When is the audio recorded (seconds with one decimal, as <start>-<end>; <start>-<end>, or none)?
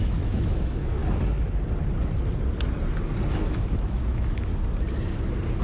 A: 1.0-3.3; 4.5-5.6